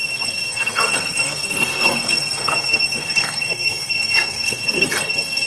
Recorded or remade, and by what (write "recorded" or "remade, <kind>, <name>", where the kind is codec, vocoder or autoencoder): remade, codec, SNAC